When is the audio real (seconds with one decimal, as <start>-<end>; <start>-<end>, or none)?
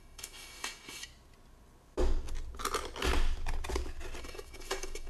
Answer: 1.1-4.2